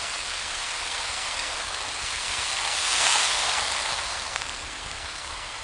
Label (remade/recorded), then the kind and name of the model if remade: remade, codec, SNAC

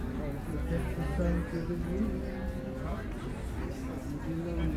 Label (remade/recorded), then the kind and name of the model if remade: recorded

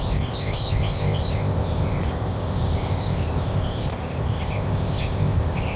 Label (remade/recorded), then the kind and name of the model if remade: remade, codec, ZipCodec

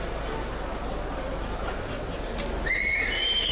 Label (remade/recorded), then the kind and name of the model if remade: recorded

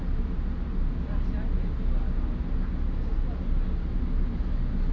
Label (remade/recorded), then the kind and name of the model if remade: recorded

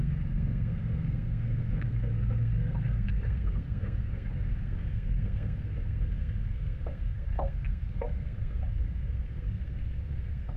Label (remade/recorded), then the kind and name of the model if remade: remade, codec, SNAC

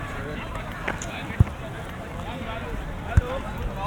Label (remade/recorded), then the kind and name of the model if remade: remade, vocoder, BigVGAN v2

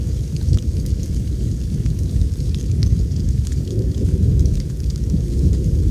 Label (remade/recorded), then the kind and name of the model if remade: remade, codec, DAC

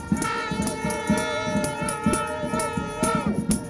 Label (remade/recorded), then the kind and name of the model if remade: recorded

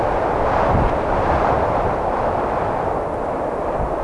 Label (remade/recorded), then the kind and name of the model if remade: recorded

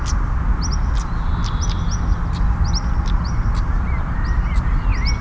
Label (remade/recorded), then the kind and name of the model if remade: recorded